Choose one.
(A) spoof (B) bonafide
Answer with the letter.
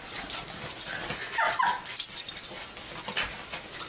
B